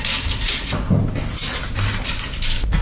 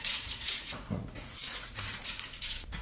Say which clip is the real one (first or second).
first